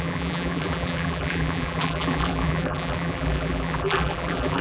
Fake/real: fake